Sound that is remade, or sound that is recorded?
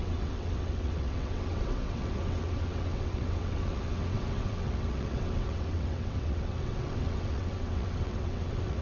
remade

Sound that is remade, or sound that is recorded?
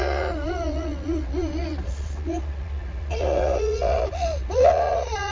remade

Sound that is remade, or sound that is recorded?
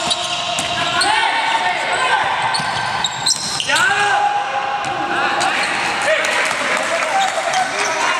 recorded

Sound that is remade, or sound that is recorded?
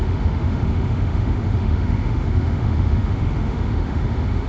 remade